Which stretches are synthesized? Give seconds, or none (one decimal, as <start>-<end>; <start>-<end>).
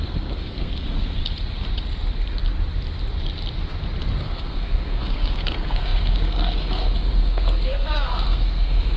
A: 0.0-1.2; 4.2-9.0